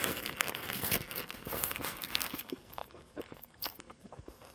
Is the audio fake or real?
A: fake